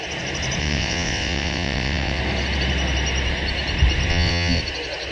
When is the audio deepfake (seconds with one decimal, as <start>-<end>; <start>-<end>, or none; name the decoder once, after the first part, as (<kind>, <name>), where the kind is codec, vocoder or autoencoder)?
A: 0.6-2.2 (vocoder, WaveNeXt); 4.1-4.6